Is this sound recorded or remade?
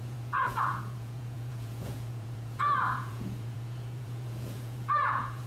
remade